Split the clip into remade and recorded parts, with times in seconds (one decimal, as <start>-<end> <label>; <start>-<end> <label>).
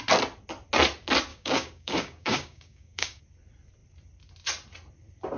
0.0-1.3 recorded; 1.3-3.2 remade; 3.2-5.4 recorded